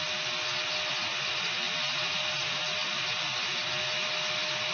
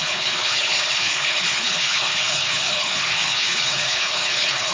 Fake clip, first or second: second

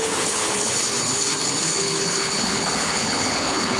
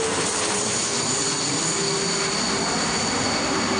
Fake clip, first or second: first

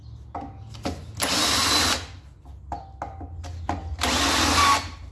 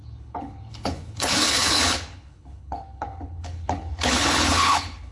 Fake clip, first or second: second